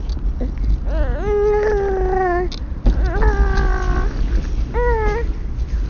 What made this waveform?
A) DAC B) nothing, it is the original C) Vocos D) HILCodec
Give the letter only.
B